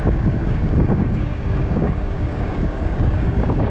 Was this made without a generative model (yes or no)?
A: no